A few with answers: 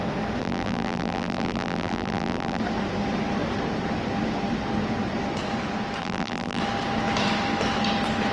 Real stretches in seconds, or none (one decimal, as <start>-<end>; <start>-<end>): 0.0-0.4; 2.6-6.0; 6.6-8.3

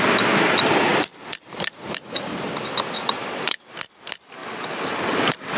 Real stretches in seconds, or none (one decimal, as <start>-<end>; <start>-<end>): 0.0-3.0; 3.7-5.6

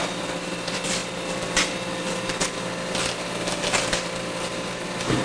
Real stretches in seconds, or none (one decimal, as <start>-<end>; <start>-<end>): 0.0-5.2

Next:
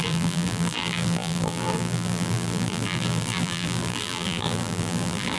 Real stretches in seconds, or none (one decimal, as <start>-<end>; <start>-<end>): none

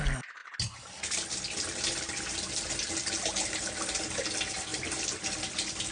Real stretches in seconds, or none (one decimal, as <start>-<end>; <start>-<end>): 0.0-5.9

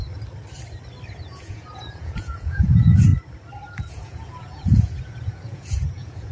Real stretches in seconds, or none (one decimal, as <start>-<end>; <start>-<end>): 0.0-1.4; 3.1-3.9

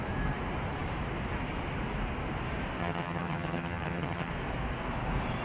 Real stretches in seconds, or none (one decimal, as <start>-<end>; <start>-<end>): 0.0-2.8; 4.3-5.4

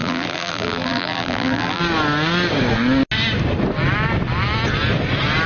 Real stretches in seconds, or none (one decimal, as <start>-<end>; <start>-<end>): 1.8-5.5